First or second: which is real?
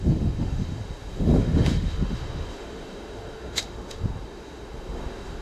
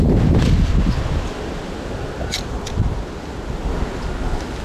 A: second